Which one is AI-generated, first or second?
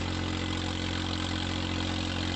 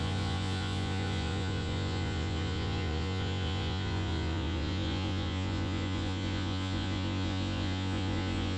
second